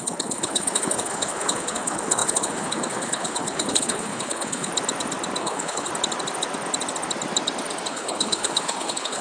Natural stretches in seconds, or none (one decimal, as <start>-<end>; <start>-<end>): 4.7-5.4; 5.9-7.9